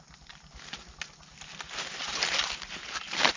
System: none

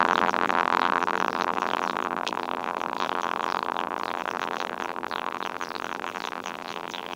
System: vocoder, BigVGAN v2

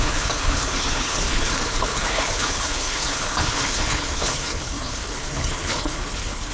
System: codec, HILCodec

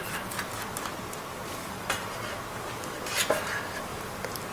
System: none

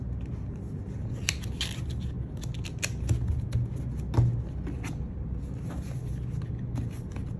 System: none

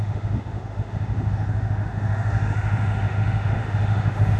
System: autoencoder, DAC-VAE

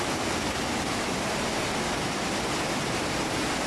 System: none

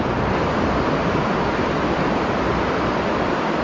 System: none